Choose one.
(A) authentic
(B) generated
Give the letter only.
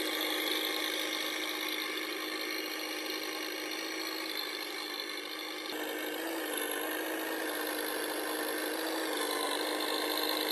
A